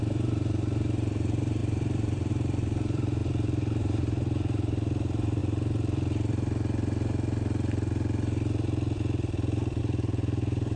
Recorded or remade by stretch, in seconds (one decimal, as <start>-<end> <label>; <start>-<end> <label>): 0.0-3.2 remade; 3.2-3.8 recorded; 3.8-5.4 remade; 5.4-9.8 recorded; 9.8-10.8 remade